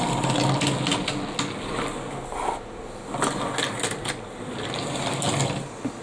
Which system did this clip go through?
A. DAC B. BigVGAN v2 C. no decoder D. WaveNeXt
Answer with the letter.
C